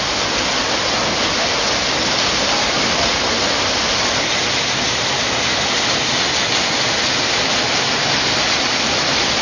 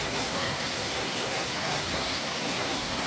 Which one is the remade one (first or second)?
second